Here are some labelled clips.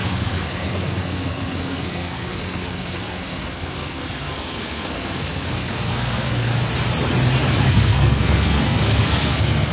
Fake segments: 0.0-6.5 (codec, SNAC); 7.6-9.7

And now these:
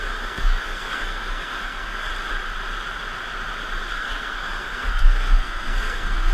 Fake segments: 0.0-2.1 (codec, SNAC); 3.9-6.3

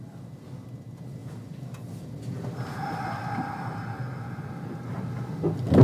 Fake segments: none

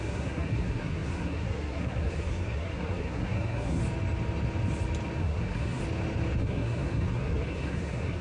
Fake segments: 0.0-3.8 (codec, SNAC); 5.2-5.8; 6.4-8.2